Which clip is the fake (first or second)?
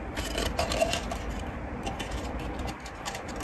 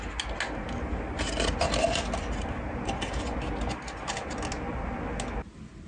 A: first